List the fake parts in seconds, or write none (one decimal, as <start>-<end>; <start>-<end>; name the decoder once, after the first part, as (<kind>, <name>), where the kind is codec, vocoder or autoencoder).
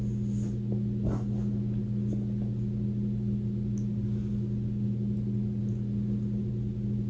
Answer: none